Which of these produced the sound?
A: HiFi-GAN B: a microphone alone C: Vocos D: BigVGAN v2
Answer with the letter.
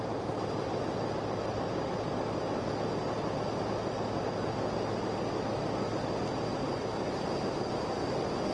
B